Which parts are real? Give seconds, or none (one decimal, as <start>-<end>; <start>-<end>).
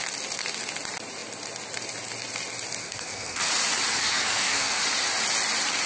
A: 0.0-2.8; 3.5-3.9; 4.8-5.9